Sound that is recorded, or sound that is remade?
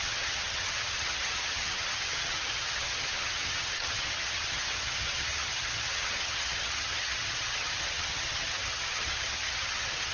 remade